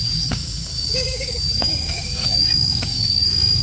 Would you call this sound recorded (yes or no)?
no